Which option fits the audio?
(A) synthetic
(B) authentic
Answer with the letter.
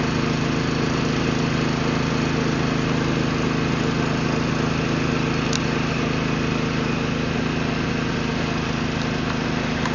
B